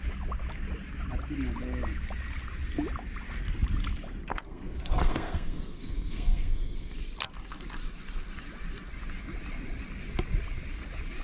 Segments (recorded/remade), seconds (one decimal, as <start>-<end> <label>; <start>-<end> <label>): 0.0-4.3 recorded; 4.3-6.9 remade; 6.9-11.2 recorded